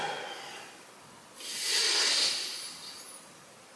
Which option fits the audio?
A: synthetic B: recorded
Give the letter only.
B